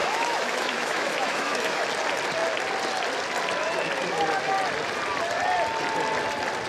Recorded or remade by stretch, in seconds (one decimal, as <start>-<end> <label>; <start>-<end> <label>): 0.0-1.8 remade; 1.8-6.7 recorded